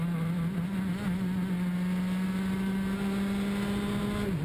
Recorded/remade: recorded